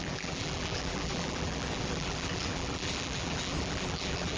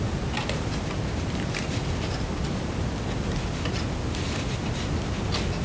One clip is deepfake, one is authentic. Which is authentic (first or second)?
second